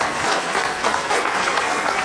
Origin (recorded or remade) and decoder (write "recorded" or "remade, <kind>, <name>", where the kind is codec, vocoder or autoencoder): remade, codec, SNAC